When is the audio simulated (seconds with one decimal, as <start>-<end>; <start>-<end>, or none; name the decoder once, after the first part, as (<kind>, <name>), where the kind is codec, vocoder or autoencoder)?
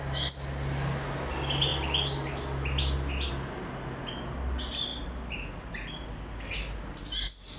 none